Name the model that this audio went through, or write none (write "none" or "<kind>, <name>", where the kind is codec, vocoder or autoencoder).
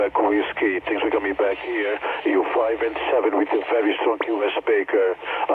none